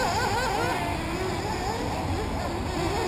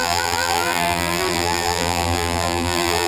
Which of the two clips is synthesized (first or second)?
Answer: second